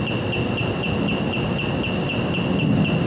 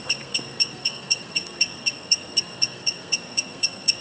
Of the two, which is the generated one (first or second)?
second